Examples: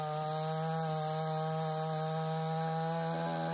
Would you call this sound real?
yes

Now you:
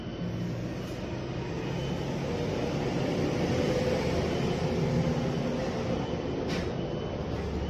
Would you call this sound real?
yes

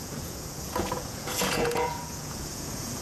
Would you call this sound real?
no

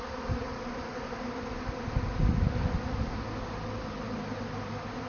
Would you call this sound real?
yes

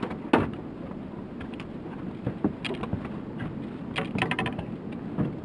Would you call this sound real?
yes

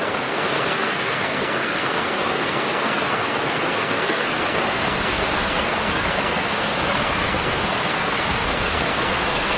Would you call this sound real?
no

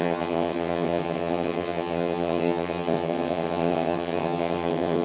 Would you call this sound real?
no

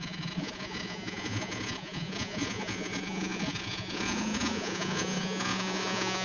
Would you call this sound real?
no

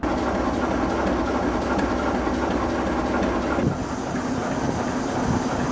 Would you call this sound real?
yes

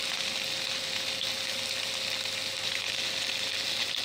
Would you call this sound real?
yes